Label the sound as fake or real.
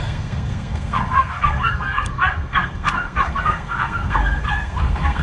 fake